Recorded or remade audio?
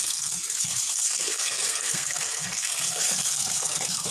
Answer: remade